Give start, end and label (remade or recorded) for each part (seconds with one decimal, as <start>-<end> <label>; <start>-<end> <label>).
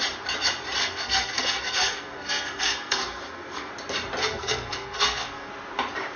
0.0-0.8 recorded; 0.8-3.7 remade; 3.7-4.2 recorded; 4.2-5.5 remade; 5.5-6.2 recorded